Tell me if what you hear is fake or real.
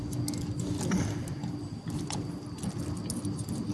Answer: real